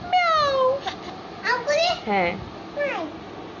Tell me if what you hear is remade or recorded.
recorded